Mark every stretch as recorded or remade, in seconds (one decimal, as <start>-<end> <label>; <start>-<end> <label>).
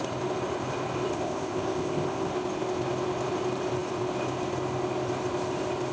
0.0-1.1 recorded; 1.1-2.3 remade; 2.3-5.9 recorded